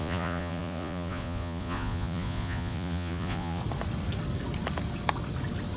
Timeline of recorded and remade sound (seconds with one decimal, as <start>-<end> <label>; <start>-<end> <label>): 0.0-3.6 remade; 3.6-5.8 recorded